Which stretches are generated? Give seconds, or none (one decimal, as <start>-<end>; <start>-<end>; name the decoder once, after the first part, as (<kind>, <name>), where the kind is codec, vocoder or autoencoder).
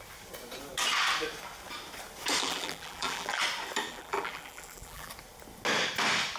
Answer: 2.4-3.4 (vocoder, BigVGAN v2); 3.9-5.1